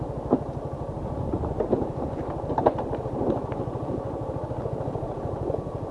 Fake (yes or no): no